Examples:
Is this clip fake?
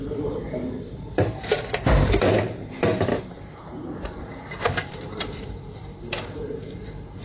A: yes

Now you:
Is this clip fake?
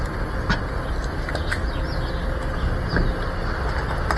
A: no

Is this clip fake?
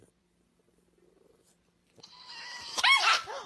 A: yes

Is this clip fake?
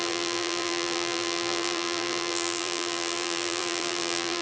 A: yes